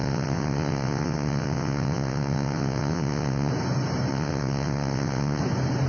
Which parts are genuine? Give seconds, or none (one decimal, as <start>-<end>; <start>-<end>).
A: 3.5-4.1; 5.4-5.9